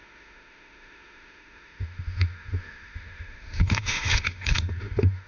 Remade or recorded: remade